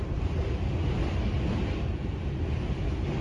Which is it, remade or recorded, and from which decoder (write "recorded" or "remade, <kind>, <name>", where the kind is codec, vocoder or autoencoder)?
recorded